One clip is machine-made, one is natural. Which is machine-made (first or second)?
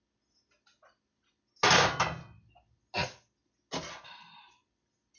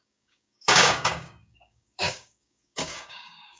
second